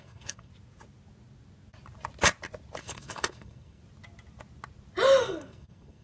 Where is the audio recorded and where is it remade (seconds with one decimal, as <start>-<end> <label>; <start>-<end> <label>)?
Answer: 0.0-0.5 remade; 0.5-2.8 recorded; 2.8-3.8 remade; 3.8-5.2 recorded; 5.2-6.0 remade